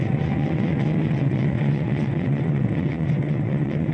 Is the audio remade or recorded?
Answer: remade